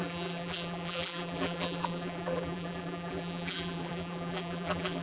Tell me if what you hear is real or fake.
fake